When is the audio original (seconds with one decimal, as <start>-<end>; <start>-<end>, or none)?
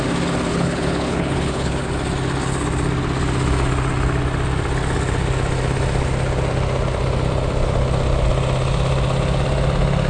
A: 0.0-0.5; 1.9-10.1